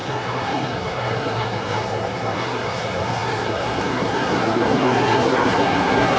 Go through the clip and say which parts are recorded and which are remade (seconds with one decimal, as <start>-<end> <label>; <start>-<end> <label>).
0.0-6.2 remade